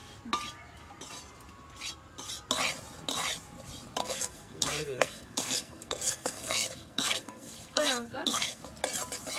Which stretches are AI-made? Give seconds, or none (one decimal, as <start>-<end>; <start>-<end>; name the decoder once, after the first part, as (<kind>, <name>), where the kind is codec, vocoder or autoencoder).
4.0-8.6 (codec, SNAC)